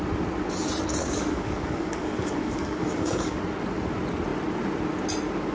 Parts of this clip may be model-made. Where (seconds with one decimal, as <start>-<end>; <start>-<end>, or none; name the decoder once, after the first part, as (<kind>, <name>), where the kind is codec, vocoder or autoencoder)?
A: 1.0-3.4 (codec, DAC)